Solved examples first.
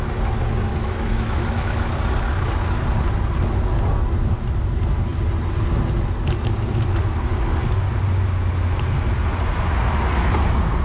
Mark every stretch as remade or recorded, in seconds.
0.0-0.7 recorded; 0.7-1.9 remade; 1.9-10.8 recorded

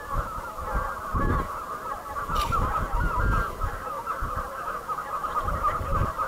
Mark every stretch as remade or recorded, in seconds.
0.0-3.7 recorded; 3.7-5.0 remade; 5.0-5.8 recorded; 5.8-6.3 remade

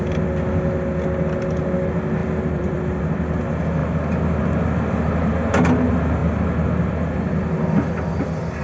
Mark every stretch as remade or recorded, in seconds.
0.0-2.2 recorded; 2.2-3.0 remade; 3.0-8.6 recorded

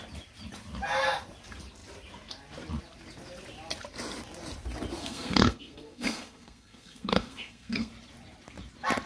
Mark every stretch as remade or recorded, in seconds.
0.0-5.0 recorded; 5.0-7.9 remade; 7.9-9.1 recorded

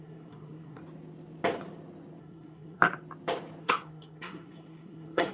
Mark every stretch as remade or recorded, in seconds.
0.0-0.8 remade; 0.8-2.2 recorded; 2.2-2.8 remade; 2.8-3.6 recorded; 3.6-5.3 remade

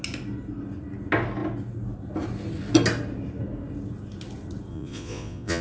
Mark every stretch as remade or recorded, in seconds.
0.0-4.7 recorded; 4.7-5.6 remade

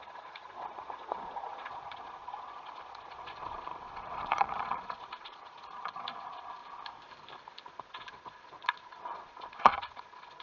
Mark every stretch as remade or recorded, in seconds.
0.0-6.6 remade; 6.6-7.7 recorded; 7.7-10.4 remade

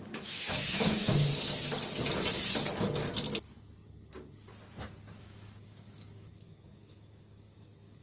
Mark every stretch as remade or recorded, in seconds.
0.0-1.3 remade; 1.3-5.2 recorded; 5.2-8.0 remade